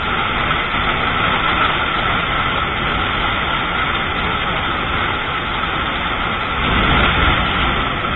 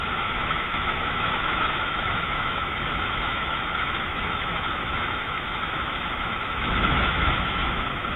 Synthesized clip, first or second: second